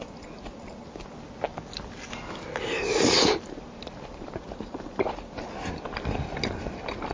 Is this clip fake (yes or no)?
no